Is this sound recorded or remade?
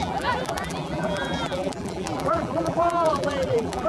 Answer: remade